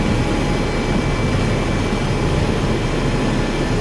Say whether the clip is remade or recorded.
recorded